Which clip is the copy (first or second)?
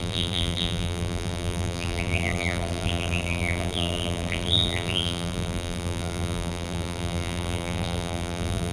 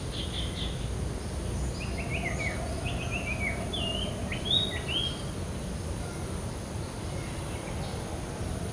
first